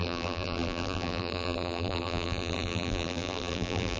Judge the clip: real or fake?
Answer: fake